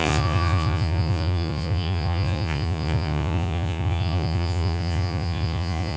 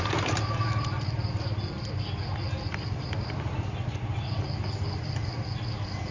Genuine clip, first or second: second